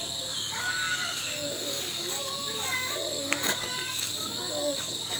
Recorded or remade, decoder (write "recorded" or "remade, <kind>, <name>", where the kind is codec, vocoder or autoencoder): remade, codec, DAC